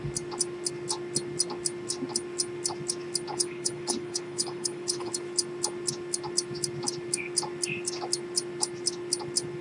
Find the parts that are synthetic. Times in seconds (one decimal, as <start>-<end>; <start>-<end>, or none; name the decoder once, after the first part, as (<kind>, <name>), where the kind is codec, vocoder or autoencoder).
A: 3.3-5.1 (codec, HILCodec)